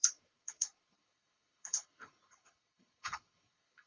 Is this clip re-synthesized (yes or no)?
yes